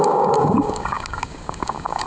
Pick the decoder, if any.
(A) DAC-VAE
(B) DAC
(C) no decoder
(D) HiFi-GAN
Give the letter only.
B